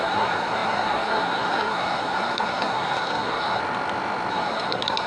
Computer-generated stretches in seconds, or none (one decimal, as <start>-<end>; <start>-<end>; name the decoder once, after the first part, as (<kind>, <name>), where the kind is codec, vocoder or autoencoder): 0.0-3.6 (codec, SNAC); 4.3-5.1